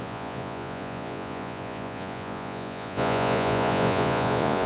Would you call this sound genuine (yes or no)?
no